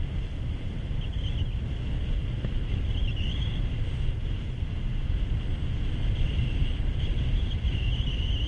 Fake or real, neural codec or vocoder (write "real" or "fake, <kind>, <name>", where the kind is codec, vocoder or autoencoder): real